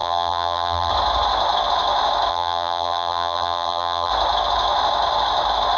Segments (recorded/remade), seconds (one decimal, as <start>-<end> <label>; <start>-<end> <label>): 0.0-0.9 remade; 0.9-2.3 recorded; 2.3-4.1 remade; 4.1-5.8 recorded